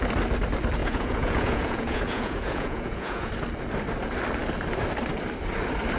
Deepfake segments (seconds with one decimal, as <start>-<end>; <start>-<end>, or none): 0.8-3.3